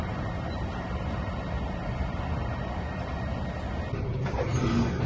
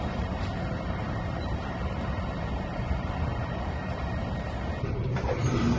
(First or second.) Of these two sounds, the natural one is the first